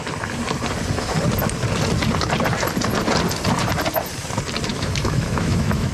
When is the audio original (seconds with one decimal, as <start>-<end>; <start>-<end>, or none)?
0.0-4.7